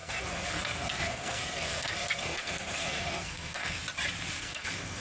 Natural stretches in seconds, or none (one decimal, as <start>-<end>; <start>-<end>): 3.8-4.4